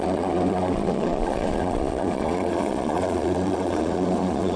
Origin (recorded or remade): remade